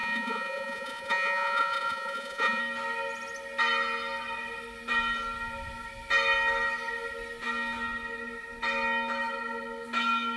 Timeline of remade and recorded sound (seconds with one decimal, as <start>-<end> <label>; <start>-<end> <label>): 0.0-2.6 remade; 2.6-10.4 recorded